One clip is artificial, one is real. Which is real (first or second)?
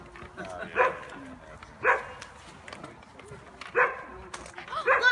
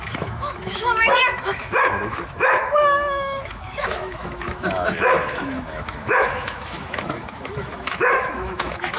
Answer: first